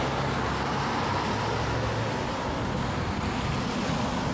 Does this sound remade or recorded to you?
recorded